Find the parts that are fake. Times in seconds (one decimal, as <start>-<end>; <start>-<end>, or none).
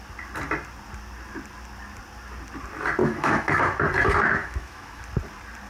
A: 3.0-3.6; 4.4-5.0